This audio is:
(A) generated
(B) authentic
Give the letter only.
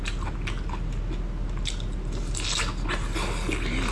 B